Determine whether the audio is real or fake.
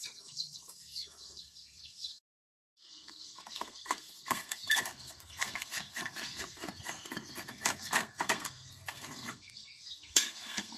fake